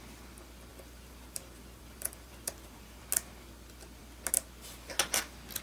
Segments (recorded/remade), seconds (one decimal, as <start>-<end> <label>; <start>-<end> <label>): 0.0-0.7 recorded; 0.7-3.0 remade; 3.0-5.6 recorded